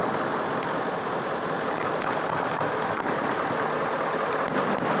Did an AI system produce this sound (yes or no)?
no